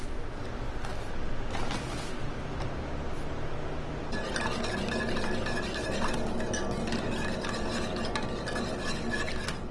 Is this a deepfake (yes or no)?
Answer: no